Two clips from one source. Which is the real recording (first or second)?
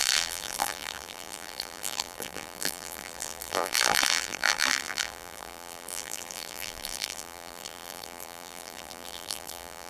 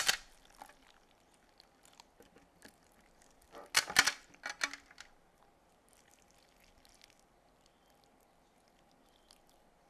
second